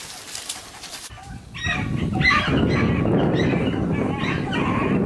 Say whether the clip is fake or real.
real